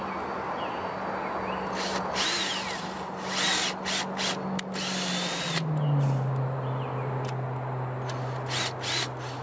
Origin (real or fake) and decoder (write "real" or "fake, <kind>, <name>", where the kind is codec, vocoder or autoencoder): real